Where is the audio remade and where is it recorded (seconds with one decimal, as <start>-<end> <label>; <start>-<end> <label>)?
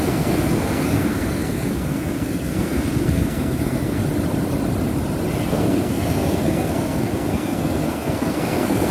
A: 0.0-4.0 remade; 4.0-5.5 recorded; 5.5-8.9 remade